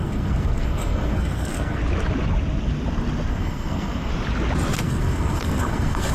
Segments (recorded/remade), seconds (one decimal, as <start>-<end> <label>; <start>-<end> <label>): 0.0-1.8 remade; 1.8-3.3 recorded; 3.3-4.1 remade; 4.1-4.8 recorded; 4.8-6.1 remade